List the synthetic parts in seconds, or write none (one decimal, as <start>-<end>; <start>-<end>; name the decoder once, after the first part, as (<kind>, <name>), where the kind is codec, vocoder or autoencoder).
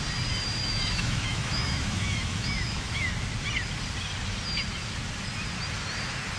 0.6-3.1 (autoencoder, DAC-VAE)